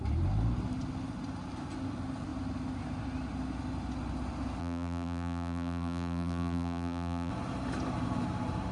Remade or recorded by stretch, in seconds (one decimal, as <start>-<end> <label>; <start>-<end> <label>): 0.0-4.6 recorded; 4.6-7.3 remade; 7.3-8.7 recorded